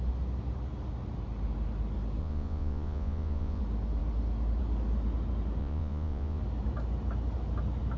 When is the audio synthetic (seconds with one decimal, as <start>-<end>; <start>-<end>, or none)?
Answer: 2.2-3.6; 5.6-6.4